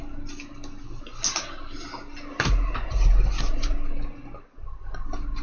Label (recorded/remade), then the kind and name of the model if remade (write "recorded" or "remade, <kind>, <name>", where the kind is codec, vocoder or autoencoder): recorded